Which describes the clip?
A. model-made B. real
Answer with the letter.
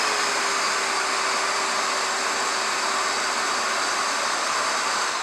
B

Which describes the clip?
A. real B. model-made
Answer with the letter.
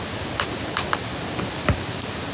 A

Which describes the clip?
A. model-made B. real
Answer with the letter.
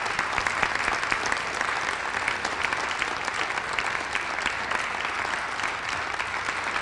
B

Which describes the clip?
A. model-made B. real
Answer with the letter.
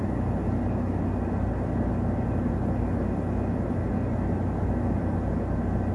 B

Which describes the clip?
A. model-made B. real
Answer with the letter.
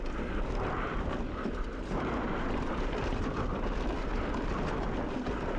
A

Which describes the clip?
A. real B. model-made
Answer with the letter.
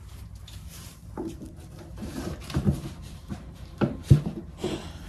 B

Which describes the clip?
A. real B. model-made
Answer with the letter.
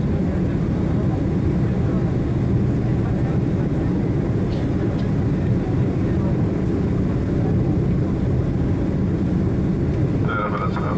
A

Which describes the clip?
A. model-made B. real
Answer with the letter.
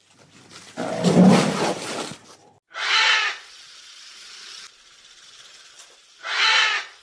B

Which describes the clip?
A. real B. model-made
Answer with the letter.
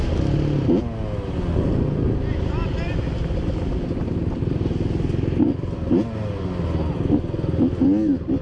A